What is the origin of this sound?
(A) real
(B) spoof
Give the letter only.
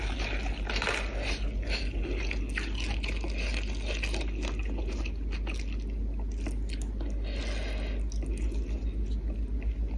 A